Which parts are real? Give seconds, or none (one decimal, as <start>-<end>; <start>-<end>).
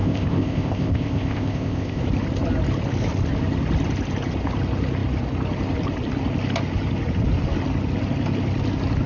2.0-9.1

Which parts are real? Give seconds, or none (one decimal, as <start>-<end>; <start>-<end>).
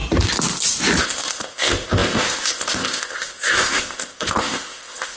0.0-1.0